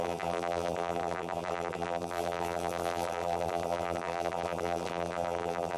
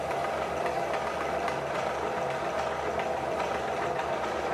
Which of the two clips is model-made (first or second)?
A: first